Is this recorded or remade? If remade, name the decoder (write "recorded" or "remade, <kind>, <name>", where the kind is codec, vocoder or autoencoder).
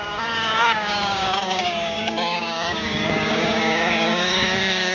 remade, codec, DAC